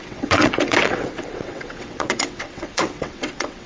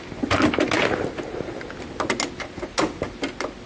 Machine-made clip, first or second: first